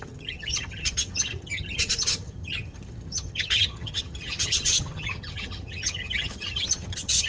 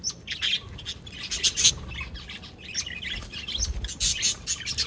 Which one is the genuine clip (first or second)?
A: second